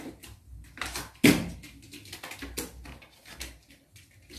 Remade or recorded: recorded